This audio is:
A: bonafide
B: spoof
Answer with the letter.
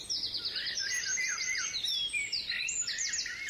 A